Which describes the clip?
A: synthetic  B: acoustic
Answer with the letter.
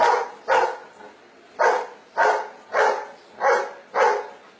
B